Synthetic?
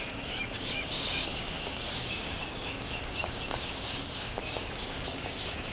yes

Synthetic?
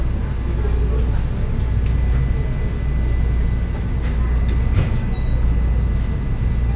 no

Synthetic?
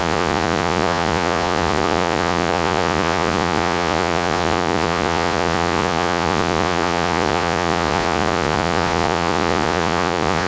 yes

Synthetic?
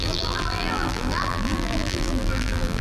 yes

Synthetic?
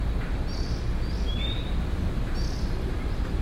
no